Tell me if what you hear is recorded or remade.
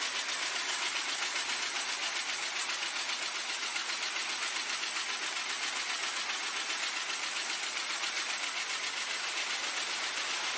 recorded